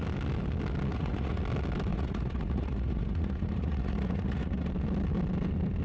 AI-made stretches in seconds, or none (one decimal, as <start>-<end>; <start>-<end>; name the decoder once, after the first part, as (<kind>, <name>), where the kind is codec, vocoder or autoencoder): 0.9-1.4 (vocoder, Vocos); 1.9-4.7